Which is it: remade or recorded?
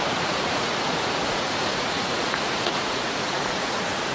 remade